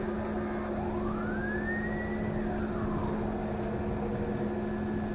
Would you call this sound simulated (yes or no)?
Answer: no